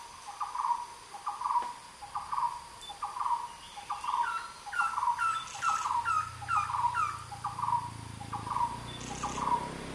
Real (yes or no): yes